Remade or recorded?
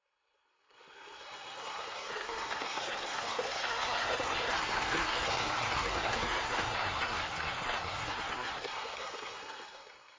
remade